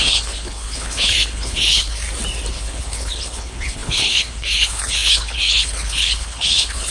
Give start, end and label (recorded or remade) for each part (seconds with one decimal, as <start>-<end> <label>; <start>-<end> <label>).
0.0-2.0 remade; 2.0-2.5 recorded; 2.5-6.9 remade